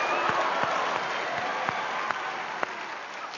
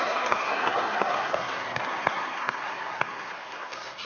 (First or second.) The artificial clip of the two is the second